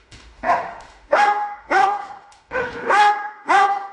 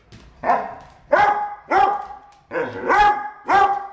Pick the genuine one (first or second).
second